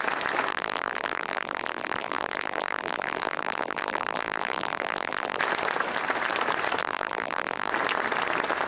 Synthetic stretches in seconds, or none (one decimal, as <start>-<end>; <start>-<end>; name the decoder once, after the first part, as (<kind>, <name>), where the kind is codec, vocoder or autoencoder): 0.5-5.4 (vocoder, BigVGAN v2); 6.8-7.7